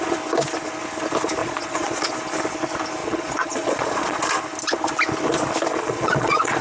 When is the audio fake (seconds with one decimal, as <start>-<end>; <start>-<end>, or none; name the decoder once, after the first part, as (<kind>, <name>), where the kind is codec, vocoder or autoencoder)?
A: 1.4-2.1 (vocoder, Vocos); 3.0-4.2; 5.7-6.6

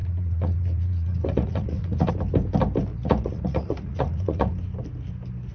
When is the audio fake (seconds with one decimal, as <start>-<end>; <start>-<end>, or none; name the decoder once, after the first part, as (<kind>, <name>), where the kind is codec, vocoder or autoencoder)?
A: 0.0-2.1 (vocoder, Vocos); 2.9-4.5

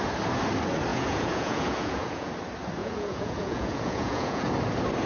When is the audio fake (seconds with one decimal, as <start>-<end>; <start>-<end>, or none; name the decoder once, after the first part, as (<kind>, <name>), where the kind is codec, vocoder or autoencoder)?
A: 0.9-2.3 (vocoder, Vocos); 2.8-4.5

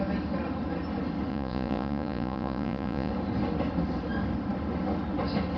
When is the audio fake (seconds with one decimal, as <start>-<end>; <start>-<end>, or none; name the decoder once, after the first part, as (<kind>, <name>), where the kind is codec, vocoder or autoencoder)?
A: 1.3-3.1 (vocoder, Vocos)